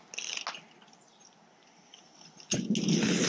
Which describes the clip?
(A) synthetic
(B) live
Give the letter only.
B